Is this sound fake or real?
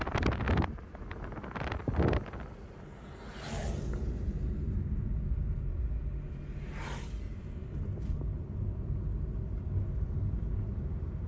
real